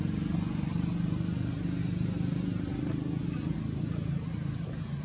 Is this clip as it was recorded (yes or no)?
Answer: yes